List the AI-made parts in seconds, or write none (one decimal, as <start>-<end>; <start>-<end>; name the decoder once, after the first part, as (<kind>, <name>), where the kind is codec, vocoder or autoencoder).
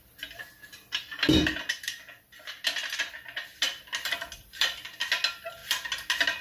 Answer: none